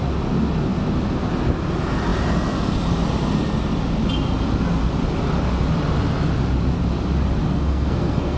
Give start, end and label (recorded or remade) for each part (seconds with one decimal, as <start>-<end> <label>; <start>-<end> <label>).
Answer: 0.0-7.4 recorded; 7.4-8.4 remade